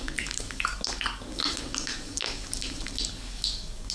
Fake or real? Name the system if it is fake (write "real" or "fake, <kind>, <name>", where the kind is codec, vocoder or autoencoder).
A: fake, codec, DAC